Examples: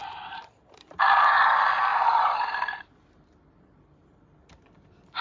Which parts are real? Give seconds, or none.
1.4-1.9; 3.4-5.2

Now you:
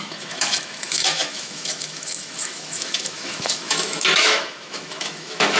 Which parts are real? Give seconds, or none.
none